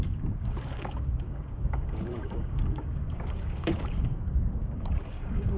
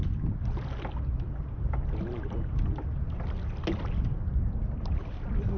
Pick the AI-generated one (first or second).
first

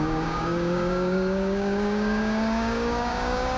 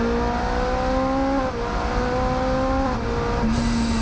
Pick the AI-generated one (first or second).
first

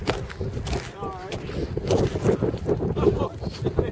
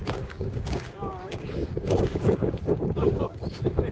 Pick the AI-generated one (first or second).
second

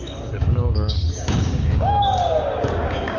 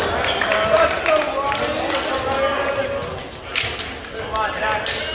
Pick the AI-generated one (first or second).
first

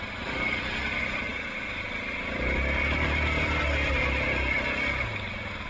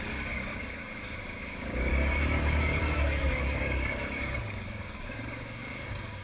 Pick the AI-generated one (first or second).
second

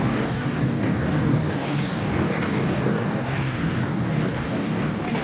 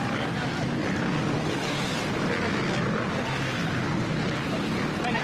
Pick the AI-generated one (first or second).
first